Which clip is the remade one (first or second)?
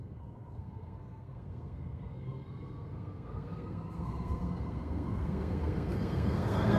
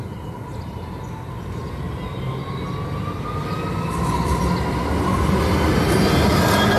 first